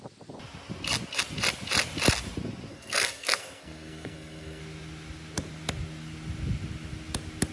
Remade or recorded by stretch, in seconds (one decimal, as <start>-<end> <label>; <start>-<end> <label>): 0.0-2.7 recorded; 2.7-4.6 remade; 4.6-7.5 recorded